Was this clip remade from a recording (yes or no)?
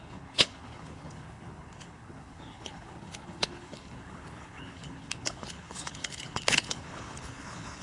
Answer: yes